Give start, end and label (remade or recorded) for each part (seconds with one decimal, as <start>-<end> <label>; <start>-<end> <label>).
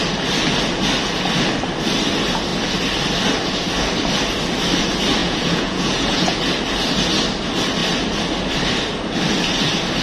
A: 0.0-5.2 recorded; 5.2-6.4 remade; 6.4-10.0 recorded